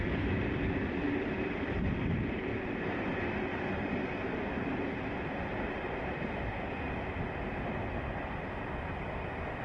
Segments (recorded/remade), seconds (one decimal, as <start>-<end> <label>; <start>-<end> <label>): 0.0-9.6 recorded